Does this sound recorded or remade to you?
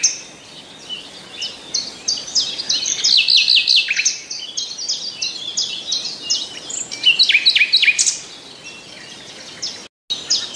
recorded